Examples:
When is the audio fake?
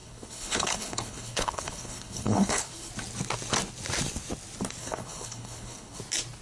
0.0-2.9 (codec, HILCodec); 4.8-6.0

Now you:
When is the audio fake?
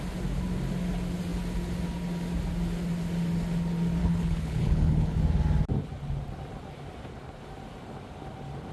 4.0-5.2 (codec, HILCodec)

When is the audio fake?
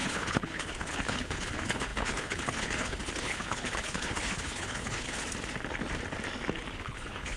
0.0-5.2 (codec, HILCodec); 6.7-7.4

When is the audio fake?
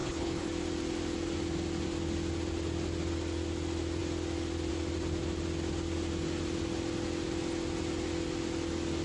0.0-0.5 (codec, HILCodec)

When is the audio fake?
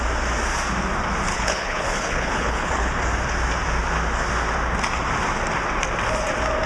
1.3-2.9 (codec, HILCodec)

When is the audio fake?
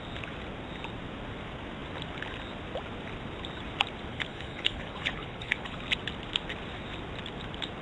4.1-5.8 (codec, HILCodec)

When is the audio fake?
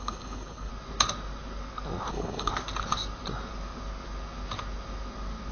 0.0-0.7 (codec, HILCodec); 2.1-2.5